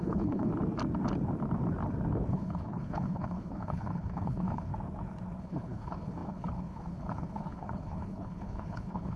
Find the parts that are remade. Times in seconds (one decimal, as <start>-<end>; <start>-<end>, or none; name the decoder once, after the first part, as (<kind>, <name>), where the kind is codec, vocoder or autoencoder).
0.0-0.5 (codec, HILCodec); 2.3-4.7; 5.4-9.2